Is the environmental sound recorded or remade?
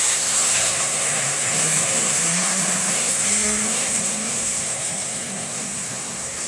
remade